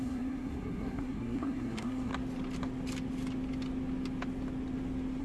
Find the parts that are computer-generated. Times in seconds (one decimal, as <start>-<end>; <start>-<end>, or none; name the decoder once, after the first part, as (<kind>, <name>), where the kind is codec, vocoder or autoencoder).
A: 0.0-2.1 (codec, SNAC)